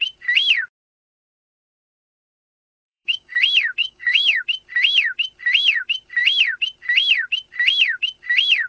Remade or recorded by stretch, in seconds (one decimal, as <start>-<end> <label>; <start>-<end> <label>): 0.0-1.7 recorded; 1.7-3.4 remade; 3.4-3.8 recorded; 3.8-4.4 remade; 4.4-8.7 recorded